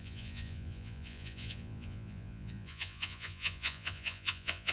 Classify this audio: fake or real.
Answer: fake